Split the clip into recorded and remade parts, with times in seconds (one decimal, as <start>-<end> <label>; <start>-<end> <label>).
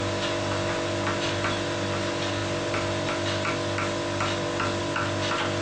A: 0.0-5.6 recorded